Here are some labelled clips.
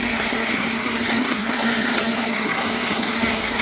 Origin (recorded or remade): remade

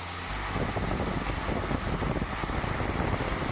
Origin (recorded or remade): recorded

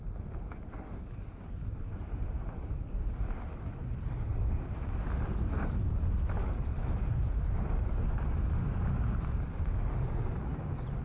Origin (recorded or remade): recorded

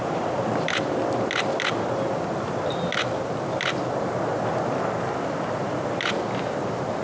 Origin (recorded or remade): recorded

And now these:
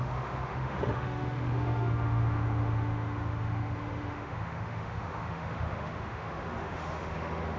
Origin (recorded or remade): remade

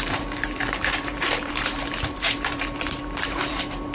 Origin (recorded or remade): remade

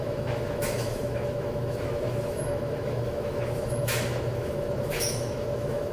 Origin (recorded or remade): remade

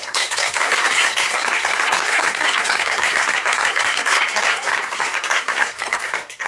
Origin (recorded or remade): remade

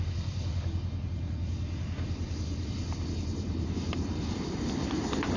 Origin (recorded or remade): recorded